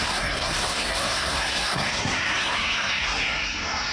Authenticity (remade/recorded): remade